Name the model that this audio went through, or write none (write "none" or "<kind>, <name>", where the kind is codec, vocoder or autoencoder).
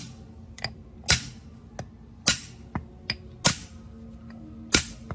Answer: none